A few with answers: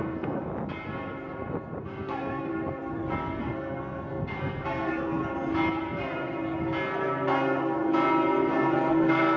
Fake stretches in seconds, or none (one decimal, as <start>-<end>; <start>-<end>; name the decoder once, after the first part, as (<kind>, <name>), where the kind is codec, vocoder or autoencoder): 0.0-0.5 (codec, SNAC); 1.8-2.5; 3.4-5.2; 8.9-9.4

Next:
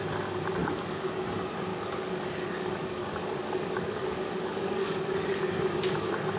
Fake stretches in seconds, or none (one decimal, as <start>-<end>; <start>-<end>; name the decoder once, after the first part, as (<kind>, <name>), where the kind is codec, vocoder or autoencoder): 0.6-1.1 (codec, DAC); 1.7-5.5

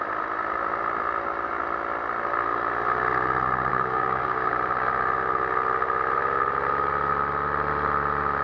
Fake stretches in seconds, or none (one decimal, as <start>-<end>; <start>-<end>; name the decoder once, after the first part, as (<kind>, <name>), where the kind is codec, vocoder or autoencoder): 3.7-4.5 (codec, DAC)

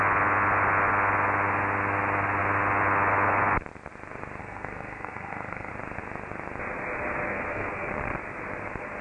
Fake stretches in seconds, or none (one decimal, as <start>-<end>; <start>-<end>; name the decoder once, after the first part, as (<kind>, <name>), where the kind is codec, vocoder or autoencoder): 4.4-5.7 (codec, SNAC); 7.3-7.9

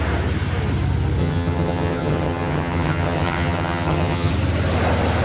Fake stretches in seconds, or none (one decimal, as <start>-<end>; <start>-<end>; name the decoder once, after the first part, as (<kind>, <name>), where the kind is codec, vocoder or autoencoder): 1.2-4.3 (vocoder, HiFi-GAN)

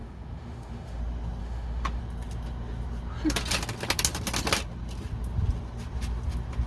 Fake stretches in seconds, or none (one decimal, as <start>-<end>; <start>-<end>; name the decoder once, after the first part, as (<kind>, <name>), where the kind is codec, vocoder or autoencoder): 0.0-1.0 (autoencoder, DAC-VAE); 1.4-2.0